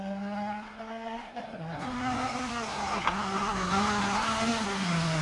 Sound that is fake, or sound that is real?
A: fake